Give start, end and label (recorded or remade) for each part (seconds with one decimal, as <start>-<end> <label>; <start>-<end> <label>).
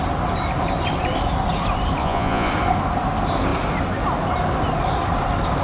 0.0-2.0 recorded; 2.0-2.5 remade; 2.5-5.6 recorded